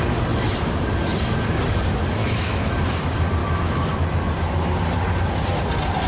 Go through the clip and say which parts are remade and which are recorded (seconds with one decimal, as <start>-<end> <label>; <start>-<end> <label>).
0.0-2.2 recorded; 2.2-2.7 remade; 2.7-3.4 recorded; 3.4-3.9 remade; 3.9-6.1 recorded